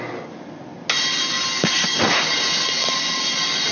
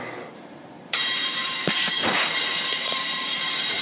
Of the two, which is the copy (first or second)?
second